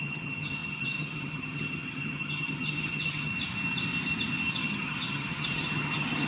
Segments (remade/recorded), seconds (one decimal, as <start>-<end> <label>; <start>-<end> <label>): 0.0-3.3 remade; 3.3-4.5 recorded; 4.5-6.3 remade